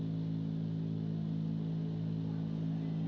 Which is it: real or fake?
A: real